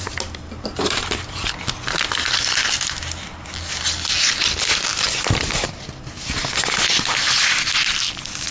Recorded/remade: recorded